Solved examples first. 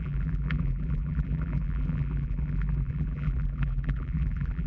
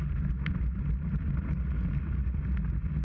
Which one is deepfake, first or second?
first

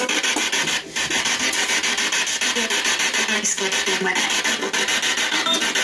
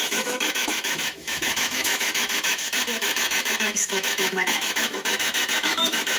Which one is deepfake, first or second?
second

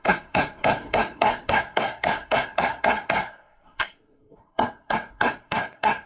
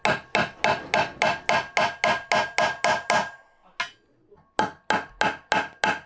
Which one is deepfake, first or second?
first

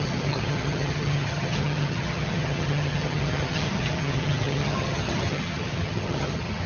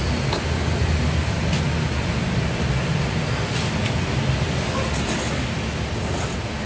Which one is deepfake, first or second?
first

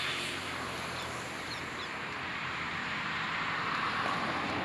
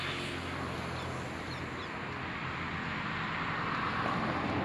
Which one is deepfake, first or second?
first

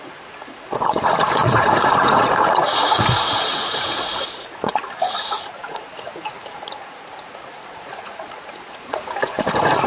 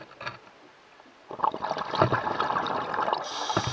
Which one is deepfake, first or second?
first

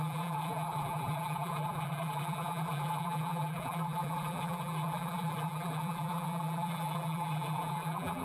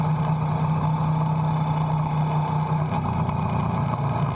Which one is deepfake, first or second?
first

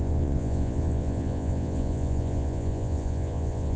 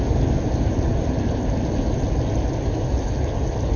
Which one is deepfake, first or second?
first